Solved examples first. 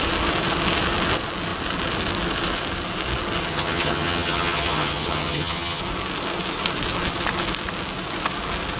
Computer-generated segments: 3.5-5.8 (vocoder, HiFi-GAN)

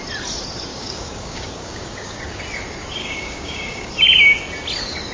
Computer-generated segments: 0.7-2.4 (codec, DAC); 3.0-3.9

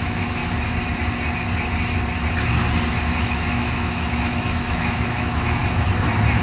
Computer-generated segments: 0.0-0.4 (autoencoder, DAC-VAE); 3.2-5.6

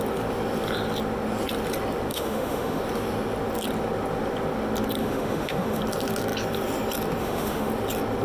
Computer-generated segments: 2.1-2.8 (autoencoder, DAC-VAE); 5.0-5.8; 7.2-7.7

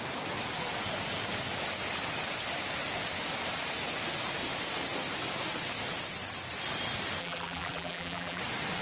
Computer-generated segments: 7.2-8.4 (vocoder, BigVGAN v2)

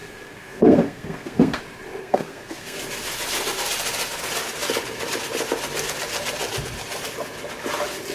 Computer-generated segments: 0.0-1.6 (codec, SNAC); 2.0-2.8